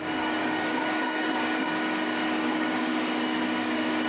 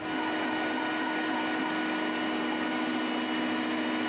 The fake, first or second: first